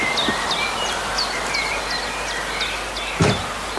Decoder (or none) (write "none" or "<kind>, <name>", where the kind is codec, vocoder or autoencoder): none